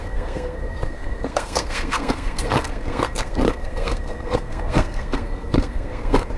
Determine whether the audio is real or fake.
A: fake